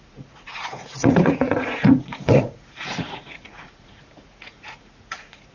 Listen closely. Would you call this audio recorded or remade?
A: remade